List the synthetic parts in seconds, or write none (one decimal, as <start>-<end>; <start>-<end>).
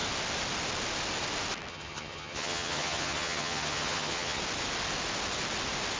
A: 1.7-4.4